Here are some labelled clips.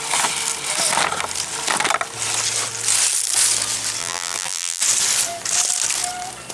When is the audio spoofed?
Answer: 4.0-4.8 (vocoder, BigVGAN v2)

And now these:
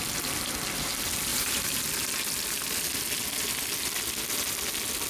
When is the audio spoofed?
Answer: 1.3-1.8 (vocoder, BigVGAN v2)